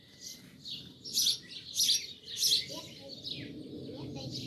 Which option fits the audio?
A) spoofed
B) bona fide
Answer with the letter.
B